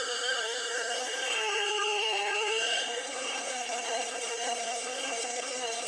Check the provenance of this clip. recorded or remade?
remade